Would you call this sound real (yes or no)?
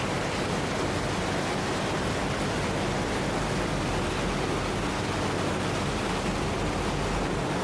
yes